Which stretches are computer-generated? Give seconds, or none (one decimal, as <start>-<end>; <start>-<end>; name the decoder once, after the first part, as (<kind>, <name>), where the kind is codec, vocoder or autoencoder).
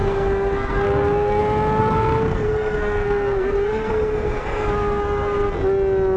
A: 0.0-1.4 (codec, SNAC); 1.8-5.5